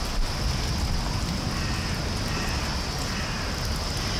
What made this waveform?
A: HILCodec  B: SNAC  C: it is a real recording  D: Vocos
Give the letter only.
C